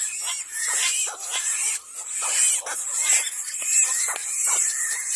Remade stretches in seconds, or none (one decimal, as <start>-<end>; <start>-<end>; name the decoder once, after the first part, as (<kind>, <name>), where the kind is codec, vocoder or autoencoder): none